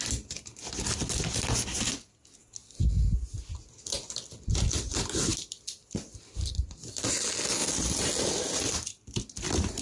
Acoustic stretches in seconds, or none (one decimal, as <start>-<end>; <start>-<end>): 0.0-5.3; 6.2-7.6